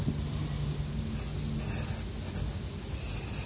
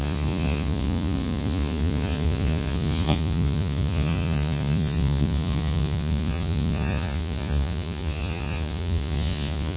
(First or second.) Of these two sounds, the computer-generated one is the second